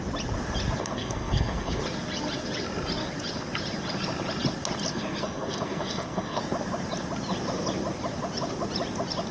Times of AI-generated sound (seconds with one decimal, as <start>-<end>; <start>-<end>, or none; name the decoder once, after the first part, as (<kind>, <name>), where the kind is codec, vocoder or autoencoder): 0.8-1.8 (codec, SNAC); 4.9-6.4